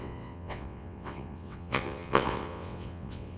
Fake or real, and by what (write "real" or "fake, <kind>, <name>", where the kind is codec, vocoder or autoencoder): fake, vocoder, WaveNeXt